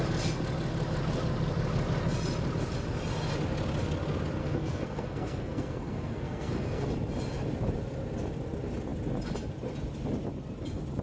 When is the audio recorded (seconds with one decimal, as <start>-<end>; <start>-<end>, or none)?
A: 0.0-4.4; 6.9-11.0